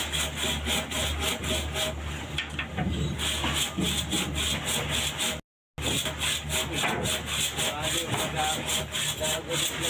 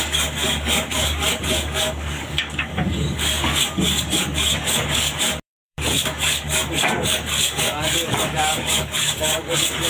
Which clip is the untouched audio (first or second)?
first